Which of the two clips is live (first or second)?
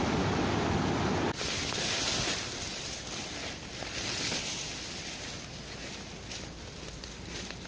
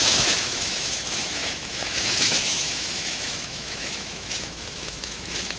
first